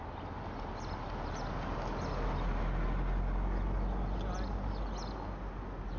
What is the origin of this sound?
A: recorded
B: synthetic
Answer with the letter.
A